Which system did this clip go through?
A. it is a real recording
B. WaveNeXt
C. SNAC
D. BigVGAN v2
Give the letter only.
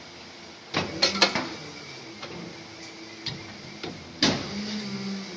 A